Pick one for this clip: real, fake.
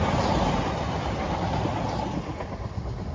real